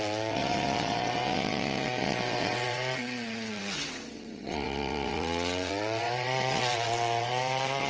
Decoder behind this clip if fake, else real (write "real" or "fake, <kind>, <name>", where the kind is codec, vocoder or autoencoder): fake, vocoder, WaveNeXt